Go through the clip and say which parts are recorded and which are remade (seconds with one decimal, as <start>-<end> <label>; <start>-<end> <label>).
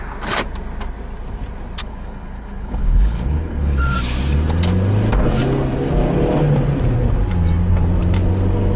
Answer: 0.0-1.8 recorded; 1.8-3.8 remade; 3.8-8.8 recorded